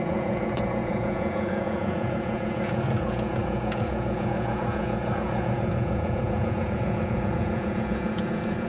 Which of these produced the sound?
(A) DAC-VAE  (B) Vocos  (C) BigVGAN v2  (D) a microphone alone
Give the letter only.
B